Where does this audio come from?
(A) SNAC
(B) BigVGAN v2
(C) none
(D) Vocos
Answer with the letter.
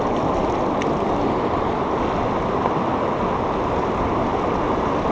C